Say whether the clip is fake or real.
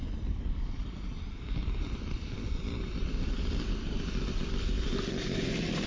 real